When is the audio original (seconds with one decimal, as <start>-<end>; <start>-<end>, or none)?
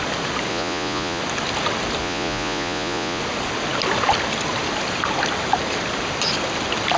0.0-0.5; 1.2-2.0; 3.2-7.0